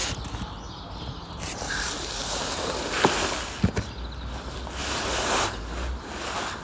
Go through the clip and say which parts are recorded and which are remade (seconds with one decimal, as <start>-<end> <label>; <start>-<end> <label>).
0.0-4.8 recorded; 4.8-5.4 remade; 5.4-6.6 recorded